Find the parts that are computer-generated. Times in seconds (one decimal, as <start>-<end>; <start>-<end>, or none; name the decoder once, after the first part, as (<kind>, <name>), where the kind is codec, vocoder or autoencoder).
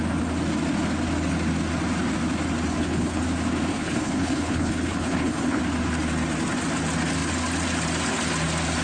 2.7-3.2 (codec, HILCodec); 3.7-5.6